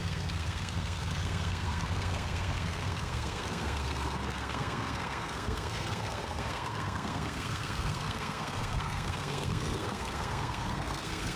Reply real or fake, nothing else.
fake